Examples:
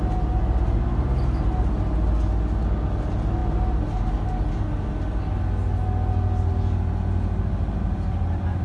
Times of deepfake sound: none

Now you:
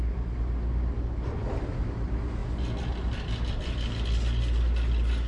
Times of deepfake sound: none

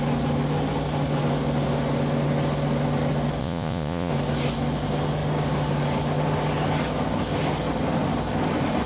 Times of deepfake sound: 3.4-4.1 (vocoder, Vocos)

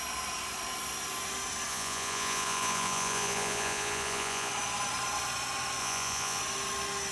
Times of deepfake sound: 1.7-4.5 (vocoder, Vocos); 5.8-6.4